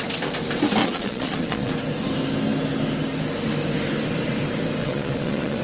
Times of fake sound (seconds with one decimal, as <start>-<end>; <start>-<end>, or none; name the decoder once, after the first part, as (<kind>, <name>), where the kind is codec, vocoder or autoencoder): 0.8-1.7 (vocoder, Vocos); 4.8-5.6